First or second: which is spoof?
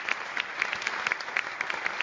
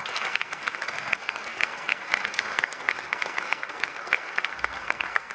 second